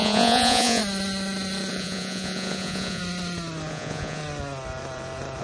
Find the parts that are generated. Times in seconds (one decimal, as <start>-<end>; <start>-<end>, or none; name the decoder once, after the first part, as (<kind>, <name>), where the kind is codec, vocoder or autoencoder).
0.0-0.8 (vocoder, Vocos); 1.7-3.0; 3.7-4.2